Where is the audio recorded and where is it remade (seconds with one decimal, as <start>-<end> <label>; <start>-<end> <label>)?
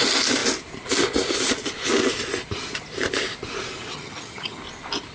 0.0-3.9 recorded; 3.9-4.6 remade; 4.6-5.1 recorded